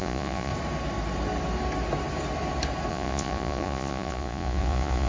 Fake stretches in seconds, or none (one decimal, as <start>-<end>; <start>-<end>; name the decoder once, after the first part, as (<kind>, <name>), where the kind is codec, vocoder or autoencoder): 0.0-0.5 (vocoder, Vocos); 2.9-5.1